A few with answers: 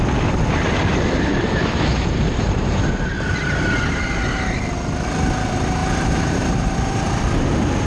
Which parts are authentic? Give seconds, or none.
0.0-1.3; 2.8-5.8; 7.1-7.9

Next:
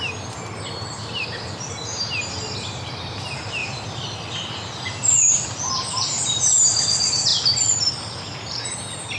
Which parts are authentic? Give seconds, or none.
0.0-3.6; 5.7-7.3; 7.9-9.2

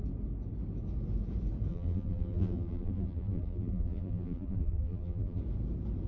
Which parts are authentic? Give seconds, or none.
0.0-1.7; 5.4-6.1

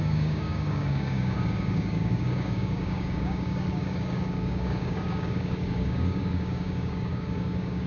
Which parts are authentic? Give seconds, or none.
none